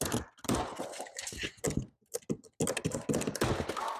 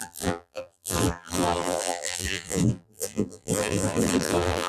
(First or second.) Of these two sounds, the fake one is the second